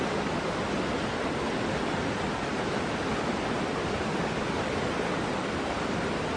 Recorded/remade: recorded